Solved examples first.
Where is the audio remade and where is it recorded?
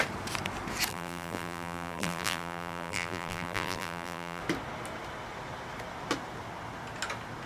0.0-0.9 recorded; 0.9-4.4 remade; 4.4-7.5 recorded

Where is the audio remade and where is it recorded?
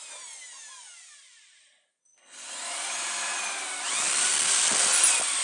0.0-5.4 recorded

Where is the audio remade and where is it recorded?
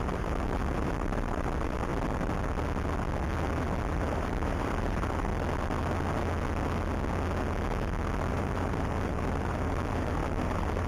0.0-1.9 remade; 1.9-3.9 recorded; 3.9-5.3 remade; 5.3-8.3 recorded; 8.3-10.9 remade